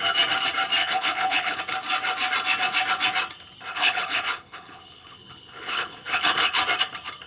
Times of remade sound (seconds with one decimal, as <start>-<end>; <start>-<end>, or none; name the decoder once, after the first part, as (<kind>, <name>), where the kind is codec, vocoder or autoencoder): 0.8-1.6 (codec, HILCodec); 3.7-6.6